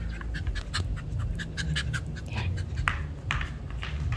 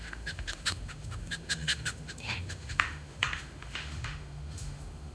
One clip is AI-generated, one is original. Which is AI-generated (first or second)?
second